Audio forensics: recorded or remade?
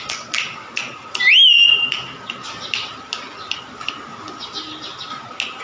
recorded